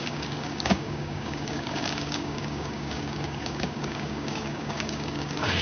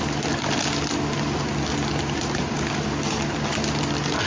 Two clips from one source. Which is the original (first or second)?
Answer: second